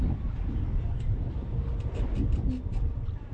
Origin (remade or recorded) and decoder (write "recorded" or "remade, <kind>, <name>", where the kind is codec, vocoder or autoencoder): recorded